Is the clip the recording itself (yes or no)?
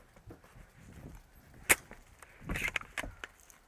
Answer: yes